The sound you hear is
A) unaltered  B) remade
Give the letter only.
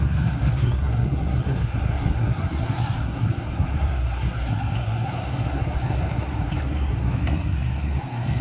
B